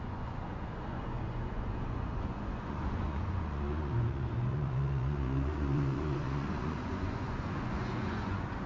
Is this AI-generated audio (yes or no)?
yes